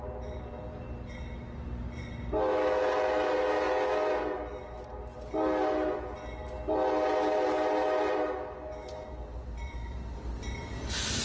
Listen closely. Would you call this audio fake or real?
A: real